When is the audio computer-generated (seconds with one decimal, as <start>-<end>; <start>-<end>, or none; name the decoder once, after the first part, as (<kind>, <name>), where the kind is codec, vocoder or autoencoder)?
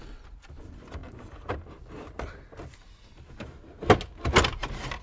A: none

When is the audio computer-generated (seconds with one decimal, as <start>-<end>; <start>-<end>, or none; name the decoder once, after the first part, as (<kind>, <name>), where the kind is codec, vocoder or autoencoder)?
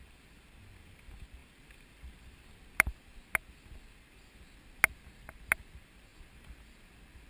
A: none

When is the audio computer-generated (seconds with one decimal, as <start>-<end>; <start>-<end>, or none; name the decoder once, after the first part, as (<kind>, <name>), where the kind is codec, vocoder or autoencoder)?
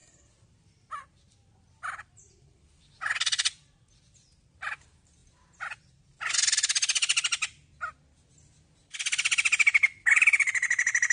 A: 0.0-4.0 (vocoder, BigVGAN v2)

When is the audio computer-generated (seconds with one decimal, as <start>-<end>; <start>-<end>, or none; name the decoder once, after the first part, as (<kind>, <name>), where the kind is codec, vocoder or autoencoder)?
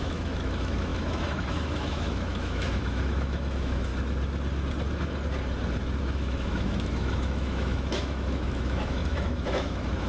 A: 0.0-3.9 (autoencoder, DAC-VAE); 6.0-10.1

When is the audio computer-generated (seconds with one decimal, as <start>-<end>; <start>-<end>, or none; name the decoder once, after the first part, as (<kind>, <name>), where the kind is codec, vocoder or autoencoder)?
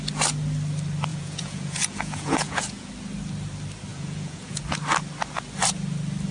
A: 1.1-2.9 (vocoder, Vocos); 3.9-4.6